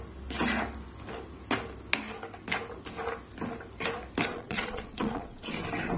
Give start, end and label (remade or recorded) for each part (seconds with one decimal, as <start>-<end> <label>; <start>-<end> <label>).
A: 0.0-4.3 recorded; 4.3-5.4 remade; 5.4-6.0 recorded